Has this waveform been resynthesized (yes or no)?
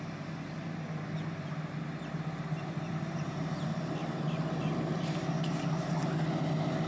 no